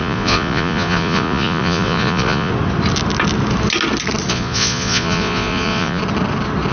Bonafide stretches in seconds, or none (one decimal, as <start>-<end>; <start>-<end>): 2.5-4.3; 6.0-6.7